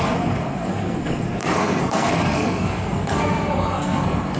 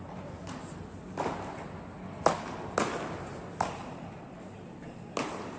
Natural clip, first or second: second